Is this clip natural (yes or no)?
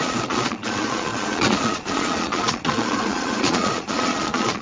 no